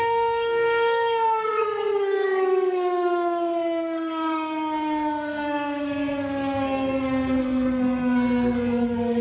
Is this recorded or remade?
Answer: remade